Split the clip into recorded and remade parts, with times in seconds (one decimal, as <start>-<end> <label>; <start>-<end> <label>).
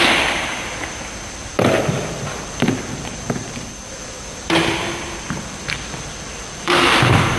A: 0.0-7.4 remade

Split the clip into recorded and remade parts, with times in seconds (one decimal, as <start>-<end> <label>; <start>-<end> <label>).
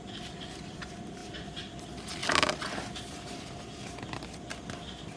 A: 0.0-1.2 remade; 1.2-1.8 recorded; 1.8-2.2 remade; 2.2-4.6 recorded; 4.6-5.2 remade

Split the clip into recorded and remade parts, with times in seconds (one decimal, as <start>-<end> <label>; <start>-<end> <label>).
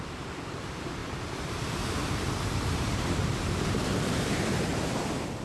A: 0.0-5.4 remade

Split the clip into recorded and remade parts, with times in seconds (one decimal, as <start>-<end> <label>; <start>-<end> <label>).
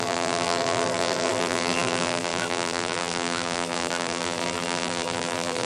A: 0.0-5.7 remade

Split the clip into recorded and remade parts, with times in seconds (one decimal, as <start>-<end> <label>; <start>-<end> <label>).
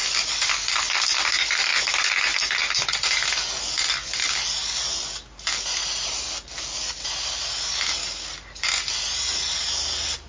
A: 0.0-0.5 remade; 0.5-10.3 recorded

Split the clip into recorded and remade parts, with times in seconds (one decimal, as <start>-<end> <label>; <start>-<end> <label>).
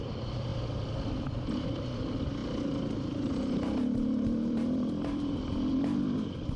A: 0.0-0.5 remade; 0.5-1.2 recorded; 1.2-6.6 remade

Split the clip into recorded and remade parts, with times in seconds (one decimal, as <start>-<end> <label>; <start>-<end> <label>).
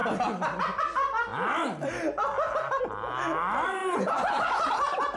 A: 0.0-3.8 recorded; 3.8-5.2 remade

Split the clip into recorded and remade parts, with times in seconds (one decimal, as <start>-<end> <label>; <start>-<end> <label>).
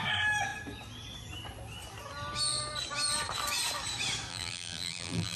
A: 0.0-4.3 recorded; 4.3-5.4 remade